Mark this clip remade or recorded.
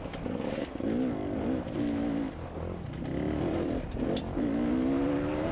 recorded